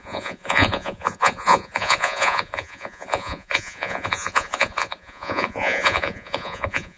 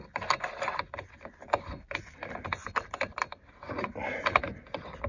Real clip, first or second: second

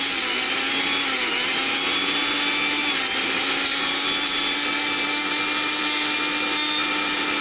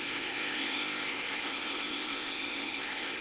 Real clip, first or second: first